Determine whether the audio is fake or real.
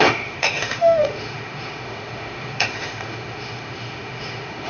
fake